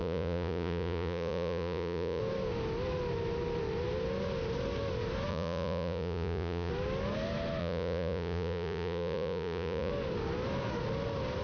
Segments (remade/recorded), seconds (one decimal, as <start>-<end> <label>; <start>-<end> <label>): 0.0-2.2 remade; 2.2-5.3 recorded; 5.3-6.7 remade; 6.7-7.6 recorded; 7.6-9.9 remade; 9.9-11.4 recorded